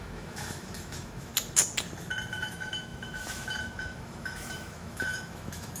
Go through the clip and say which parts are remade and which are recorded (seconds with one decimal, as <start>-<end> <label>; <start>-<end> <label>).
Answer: 0.0-1.3 remade; 1.3-2.3 recorded; 2.3-5.8 remade